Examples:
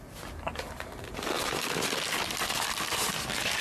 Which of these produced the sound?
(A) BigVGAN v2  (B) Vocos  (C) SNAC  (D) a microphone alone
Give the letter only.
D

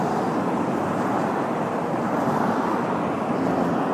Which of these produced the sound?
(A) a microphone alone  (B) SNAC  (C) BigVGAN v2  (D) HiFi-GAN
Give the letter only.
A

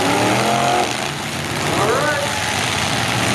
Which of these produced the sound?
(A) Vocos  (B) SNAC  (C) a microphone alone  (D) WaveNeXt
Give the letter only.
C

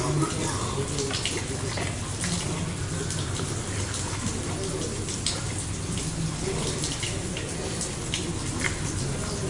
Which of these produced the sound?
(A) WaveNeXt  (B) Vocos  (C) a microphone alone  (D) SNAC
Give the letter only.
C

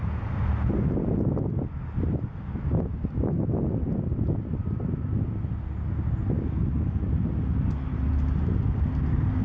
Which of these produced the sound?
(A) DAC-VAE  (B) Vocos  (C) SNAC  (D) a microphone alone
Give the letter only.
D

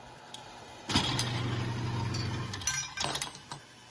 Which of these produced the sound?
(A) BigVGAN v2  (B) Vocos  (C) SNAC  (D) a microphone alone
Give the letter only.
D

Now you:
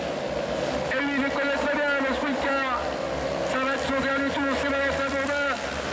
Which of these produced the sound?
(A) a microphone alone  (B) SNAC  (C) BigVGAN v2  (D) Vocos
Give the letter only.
A